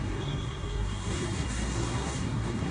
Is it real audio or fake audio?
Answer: fake